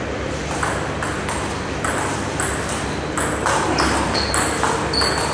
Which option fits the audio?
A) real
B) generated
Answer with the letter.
A